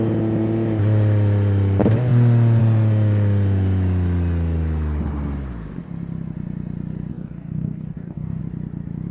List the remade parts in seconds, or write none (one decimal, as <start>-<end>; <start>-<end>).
7.1-8.4